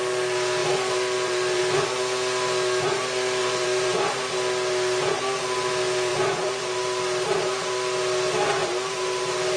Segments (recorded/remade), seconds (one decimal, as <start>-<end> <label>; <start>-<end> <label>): 0.0-0.6 recorded; 0.6-1.6 remade; 1.6-3.4 recorded; 3.4-4.2 remade; 4.2-6.1 recorded; 6.1-7.6 remade; 7.6-8.6 recorded; 8.6-9.6 remade